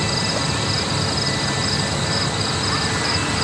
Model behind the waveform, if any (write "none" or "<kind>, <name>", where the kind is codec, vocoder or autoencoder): none